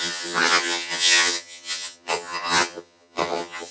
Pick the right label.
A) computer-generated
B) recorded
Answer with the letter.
A